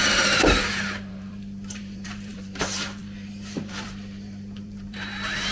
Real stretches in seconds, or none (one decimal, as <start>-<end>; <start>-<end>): none